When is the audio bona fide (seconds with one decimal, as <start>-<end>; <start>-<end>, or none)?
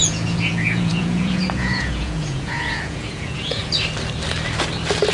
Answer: 3.6-5.1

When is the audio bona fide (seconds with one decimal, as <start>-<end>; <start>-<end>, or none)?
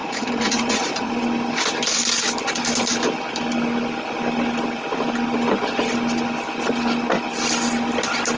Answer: 1.1-8.4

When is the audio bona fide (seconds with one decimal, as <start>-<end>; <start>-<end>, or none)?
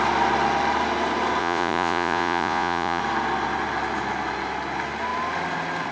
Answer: 0.0-1.4; 3.0-5.9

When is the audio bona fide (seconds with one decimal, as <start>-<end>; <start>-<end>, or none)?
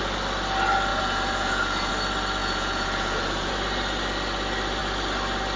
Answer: 0.0-0.9; 1.9-2.4; 3.5-5.6